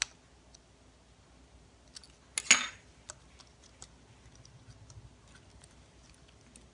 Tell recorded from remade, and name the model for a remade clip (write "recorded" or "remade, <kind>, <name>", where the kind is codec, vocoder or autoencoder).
recorded